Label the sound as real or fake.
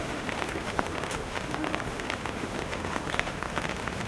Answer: fake